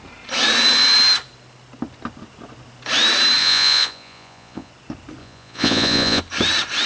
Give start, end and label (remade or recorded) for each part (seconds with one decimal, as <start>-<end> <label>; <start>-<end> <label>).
0.0-3.4 recorded; 3.4-4.7 remade; 4.7-5.2 recorded; 5.2-6.2 remade; 6.2-6.9 recorded